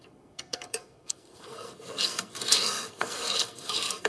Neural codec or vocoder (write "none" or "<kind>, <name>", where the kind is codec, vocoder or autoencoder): codec, SNAC